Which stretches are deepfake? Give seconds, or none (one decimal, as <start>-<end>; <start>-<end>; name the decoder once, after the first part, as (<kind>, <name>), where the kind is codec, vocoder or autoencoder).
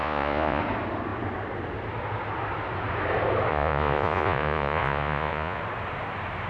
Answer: 0.0-0.6 (vocoder, Vocos); 3.5-5.6